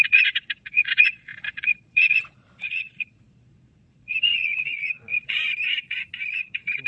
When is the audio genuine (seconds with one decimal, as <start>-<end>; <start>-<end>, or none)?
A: 5.5-6.3